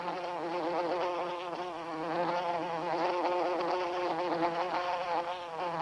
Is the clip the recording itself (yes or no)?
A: yes